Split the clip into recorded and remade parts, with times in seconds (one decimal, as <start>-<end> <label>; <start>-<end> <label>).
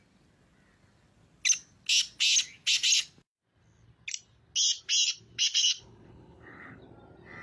0.0-5.6 recorded; 5.6-6.8 remade; 6.8-7.4 recorded